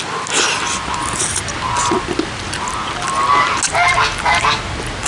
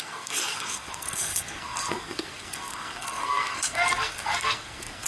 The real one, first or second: first